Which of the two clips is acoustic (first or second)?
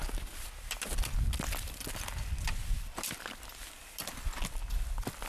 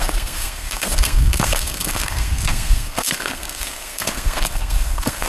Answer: first